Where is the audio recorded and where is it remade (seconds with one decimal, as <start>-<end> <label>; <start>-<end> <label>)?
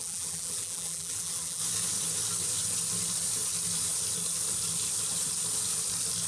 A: 0.0-1.6 remade; 1.6-6.3 recorded